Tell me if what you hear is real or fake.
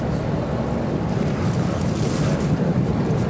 real